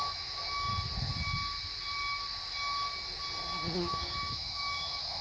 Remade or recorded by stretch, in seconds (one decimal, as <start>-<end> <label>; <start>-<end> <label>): 0.0-0.7 remade; 0.7-3.8 recorded; 3.8-5.2 remade